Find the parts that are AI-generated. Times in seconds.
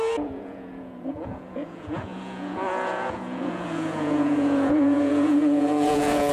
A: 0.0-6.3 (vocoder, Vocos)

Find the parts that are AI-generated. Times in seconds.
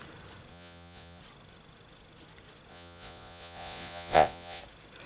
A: 0.5-1.2 (vocoder, Vocos); 2.7-4.6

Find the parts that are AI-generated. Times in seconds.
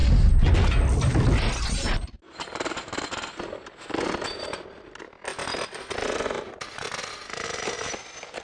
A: none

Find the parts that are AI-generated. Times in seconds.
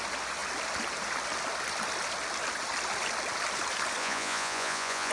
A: 4.0-5.1 (vocoder, Vocos)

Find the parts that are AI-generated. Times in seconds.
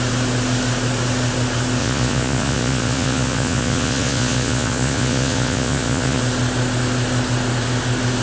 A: 1.8-6.2 (vocoder, Vocos)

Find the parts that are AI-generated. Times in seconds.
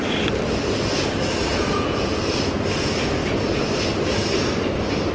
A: 1.5-2.1 (vocoder, Vocos)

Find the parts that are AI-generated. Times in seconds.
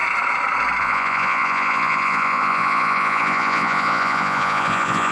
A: 0.8-5.1 (vocoder, Vocos)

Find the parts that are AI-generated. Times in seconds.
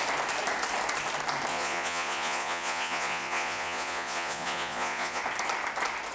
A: 1.5-5.2 (vocoder, Vocos)